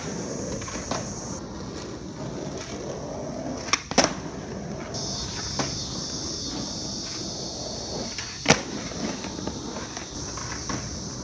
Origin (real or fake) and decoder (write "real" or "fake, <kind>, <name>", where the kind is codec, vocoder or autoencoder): real